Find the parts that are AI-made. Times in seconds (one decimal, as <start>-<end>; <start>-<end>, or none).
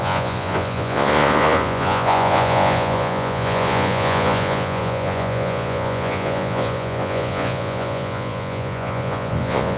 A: 0.0-9.8